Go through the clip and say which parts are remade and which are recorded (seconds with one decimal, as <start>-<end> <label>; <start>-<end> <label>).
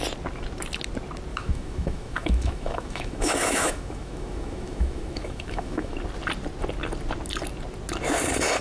0.0-1.3 recorded; 1.3-5.9 remade; 5.9-8.6 recorded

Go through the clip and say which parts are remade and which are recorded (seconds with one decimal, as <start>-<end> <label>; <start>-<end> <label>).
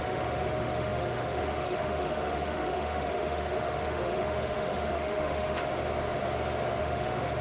0.0-5.7 remade; 5.7-6.8 recorded; 6.8-7.4 remade